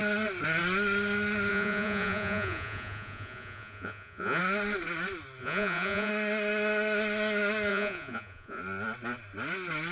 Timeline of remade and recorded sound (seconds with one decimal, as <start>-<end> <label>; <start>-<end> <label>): 0.0-1.5 recorded; 1.5-4.4 remade; 4.4-5.4 recorded; 5.4-6.1 remade; 6.1-7.7 recorded; 7.7-8.6 remade; 8.6-9.9 recorded

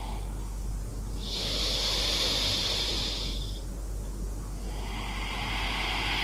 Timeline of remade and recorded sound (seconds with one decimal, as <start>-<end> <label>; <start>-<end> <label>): 0.0-6.2 recorded

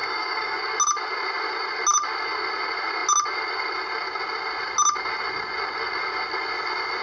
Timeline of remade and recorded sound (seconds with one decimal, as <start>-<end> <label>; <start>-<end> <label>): 0.0-0.6 remade; 0.6-7.0 recorded

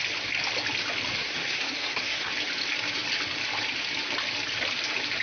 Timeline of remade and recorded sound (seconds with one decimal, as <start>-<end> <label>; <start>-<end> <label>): 0.0-1.1 recorded; 1.1-2.3 remade; 2.3-5.2 recorded

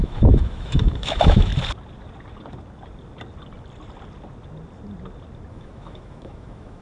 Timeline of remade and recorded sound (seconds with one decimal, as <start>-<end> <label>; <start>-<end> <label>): 0.0-1.5 remade; 1.5-5.5 recorded; 5.5-6.8 remade

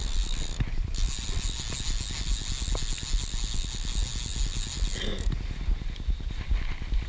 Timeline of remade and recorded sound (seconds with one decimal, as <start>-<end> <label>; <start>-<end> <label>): 0.0-5.1 recorded; 5.1-5.9 remade; 5.9-7.1 recorded

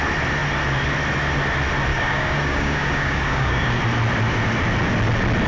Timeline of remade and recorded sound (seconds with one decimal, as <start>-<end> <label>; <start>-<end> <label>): 0.0-1.9 recorded; 1.9-3.8 remade; 3.8-5.5 recorded

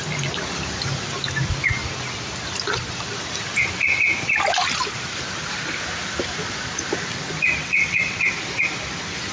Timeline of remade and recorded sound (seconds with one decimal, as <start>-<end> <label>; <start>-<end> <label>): 0.0-7.6 recorded; 7.6-8.3 remade; 8.3-9.3 recorded